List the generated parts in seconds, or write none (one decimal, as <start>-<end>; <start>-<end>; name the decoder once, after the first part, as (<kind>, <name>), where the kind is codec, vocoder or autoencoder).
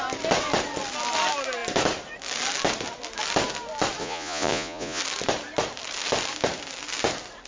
4.0-5.0 (vocoder, Vocos)